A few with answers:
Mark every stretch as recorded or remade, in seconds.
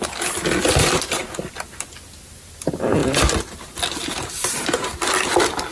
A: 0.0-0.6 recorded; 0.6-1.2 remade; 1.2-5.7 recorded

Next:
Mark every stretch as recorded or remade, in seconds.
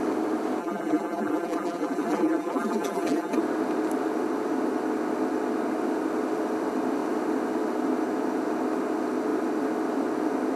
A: 0.0-0.6 recorded; 0.6-3.4 remade; 3.4-10.6 recorded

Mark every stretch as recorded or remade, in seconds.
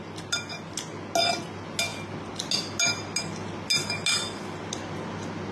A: 0.0-5.5 recorded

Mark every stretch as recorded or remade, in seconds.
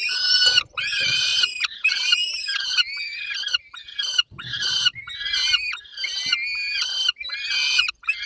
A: 0.0-5.9 remade; 5.9-7.9 recorded; 7.9-8.3 remade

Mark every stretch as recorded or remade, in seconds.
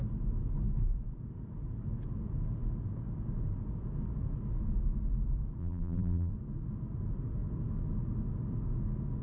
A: 0.0-5.6 recorded; 5.6-6.3 remade; 6.3-9.2 recorded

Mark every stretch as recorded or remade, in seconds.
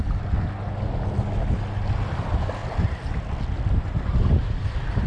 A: 0.0-2.6 recorded; 2.6-3.4 remade; 3.4-4.1 recorded; 4.1-5.1 remade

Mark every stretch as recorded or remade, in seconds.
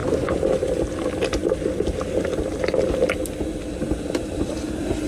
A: 0.0-0.8 remade; 0.8-5.1 recorded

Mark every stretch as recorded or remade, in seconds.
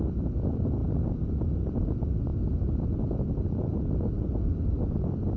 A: 0.0-0.8 recorded; 0.8-1.9 remade; 1.9-2.3 recorded; 2.3-3.3 remade; 3.3-5.4 recorded